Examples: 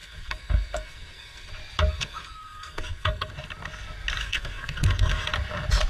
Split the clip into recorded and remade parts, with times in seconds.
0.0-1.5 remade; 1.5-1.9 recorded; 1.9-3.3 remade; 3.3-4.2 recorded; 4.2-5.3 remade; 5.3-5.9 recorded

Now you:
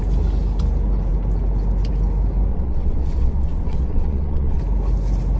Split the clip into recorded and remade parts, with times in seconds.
0.0-2.5 recorded; 2.5-4.6 remade; 4.6-5.4 recorded

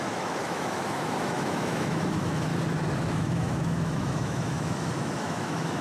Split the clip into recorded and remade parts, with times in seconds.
0.0-2.5 remade; 2.5-3.0 recorded; 3.0-5.8 remade

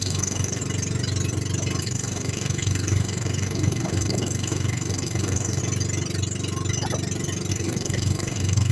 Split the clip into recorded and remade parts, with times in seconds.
0.0-0.6 remade; 0.6-1.8 recorded; 1.8-5.6 remade; 5.6-7.5 recorded; 7.5-8.7 remade

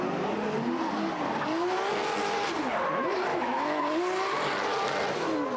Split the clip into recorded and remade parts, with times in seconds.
0.0-3.3 recorded; 3.3-3.8 remade; 3.8-5.6 recorded